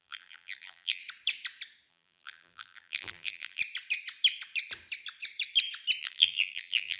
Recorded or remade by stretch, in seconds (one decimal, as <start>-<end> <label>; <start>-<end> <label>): 0.0-1.0 remade; 1.0-1.9 recorded; 1.9-3.6 remade; 3.6-6.0 recorded; 6.0-7.0 remade